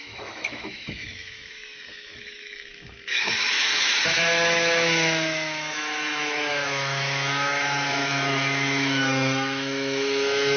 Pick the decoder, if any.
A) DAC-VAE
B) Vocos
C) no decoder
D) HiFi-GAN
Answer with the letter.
A